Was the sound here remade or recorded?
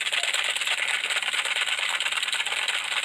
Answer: recorded